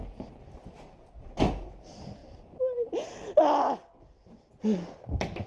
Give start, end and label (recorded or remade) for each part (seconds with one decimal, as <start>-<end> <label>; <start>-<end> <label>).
0.0-5.5 recorded